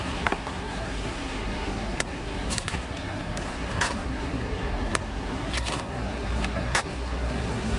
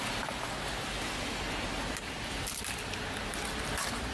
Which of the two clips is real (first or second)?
second